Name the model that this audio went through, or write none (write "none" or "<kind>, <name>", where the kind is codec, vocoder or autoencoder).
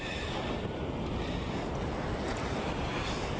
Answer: none